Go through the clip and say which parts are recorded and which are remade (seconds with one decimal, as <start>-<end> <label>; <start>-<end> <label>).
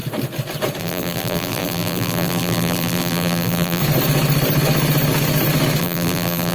0.0-0.8 recorded; 0.8-3.8 remade; 3.8-5.8 recorded; 5.8-6.5 remade